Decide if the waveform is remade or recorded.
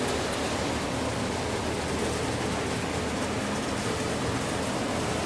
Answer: recorded